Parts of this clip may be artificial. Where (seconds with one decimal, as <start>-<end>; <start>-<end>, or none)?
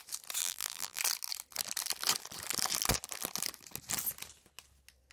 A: 0.4-1.0